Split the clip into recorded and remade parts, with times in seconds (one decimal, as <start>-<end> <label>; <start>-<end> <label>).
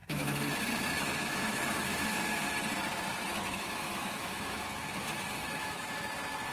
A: 0.0-2.5 remade; 2.5-3.3 recorded; 3.3-5.8 remade; 5.8-6.5 recorded